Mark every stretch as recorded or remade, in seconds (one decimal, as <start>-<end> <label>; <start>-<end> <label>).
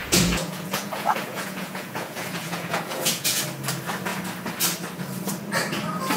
0.0-3.4 remade; 3.4-6.2 recorded